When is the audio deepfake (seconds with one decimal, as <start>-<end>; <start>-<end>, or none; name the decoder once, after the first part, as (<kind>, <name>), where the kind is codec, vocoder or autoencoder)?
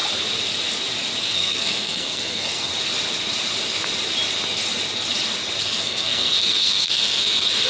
1.2-2.7 (codec, SNAC); 5.6-7.7